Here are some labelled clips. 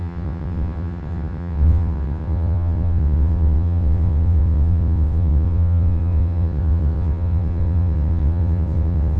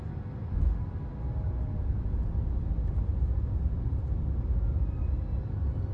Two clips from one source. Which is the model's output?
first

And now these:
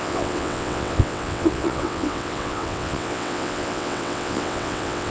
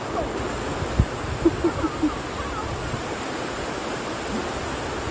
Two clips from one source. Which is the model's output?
first